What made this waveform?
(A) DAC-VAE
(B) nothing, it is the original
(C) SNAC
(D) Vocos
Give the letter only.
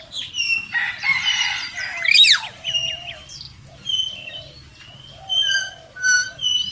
B